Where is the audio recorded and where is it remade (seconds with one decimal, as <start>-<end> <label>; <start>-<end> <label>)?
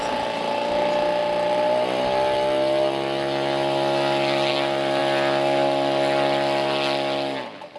0.0-7.8 recorded